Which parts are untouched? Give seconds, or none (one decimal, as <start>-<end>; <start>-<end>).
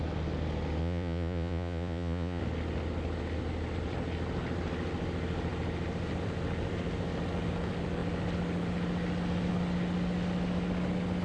0.0-0.8; 2.4-11.2